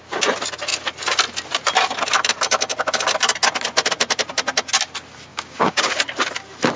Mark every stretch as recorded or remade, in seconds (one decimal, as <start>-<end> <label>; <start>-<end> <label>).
0.0-5.3 recorded; 5.3-5.9 remade; 5.9-6.8 recorded

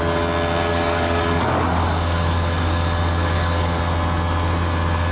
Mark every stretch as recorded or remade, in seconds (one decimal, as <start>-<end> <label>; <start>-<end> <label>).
0.0-0.7 recorded; 0.7-3.8 remade; 3.8-5.1 recorded

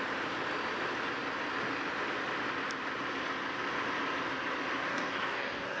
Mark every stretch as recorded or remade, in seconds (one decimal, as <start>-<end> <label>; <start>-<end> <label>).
0.0-4.9 recorded; 4.9-5.8 remade

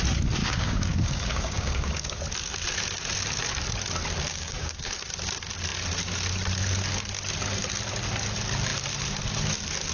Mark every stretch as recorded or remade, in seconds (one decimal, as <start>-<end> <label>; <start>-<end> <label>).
0.0-0.4 recorded; 0.4-2.2 remade; 2.2-4.3 recorded; 4.3-4.9 remade; 4.9-9.9 recorded

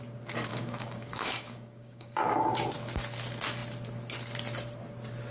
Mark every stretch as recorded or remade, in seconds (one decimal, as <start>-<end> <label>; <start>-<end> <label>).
0.0-0.5 recorded; 0.5-2.7 remade; 2.7-5.3 recorded

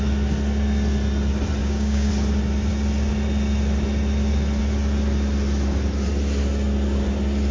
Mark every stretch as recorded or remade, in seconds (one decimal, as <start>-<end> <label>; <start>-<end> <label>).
0.0-1.6 recorded; 1.6-2.1 remade; 2.1-7.5 recorded

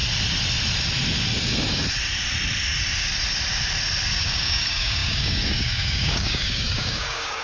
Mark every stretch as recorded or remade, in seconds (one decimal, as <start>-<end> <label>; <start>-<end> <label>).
0.0-4.2 recorded; 4.2-7.4 remade

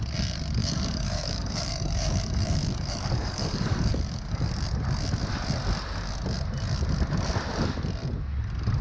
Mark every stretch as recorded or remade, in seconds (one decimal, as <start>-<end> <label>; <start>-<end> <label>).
0.0-0.6 recorded; 0.6-4.5 remade; 4.5-8.8 recorded